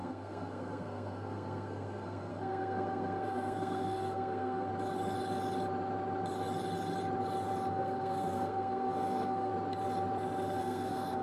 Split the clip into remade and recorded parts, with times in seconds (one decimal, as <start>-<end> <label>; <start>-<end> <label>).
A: 0.0-4.7 remade; 4.7-7.7 recorded; 7.7-9.5 remade; 9.5-10.6 recorded; 10.6-11.2 remade